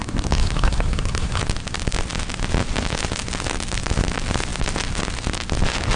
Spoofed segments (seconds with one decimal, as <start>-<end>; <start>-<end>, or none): 0.0-1.4